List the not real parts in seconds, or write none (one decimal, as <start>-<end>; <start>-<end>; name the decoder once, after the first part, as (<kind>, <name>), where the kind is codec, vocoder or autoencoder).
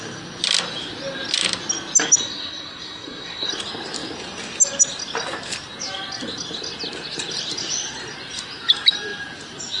2.2-3.5 (codec, SNAC)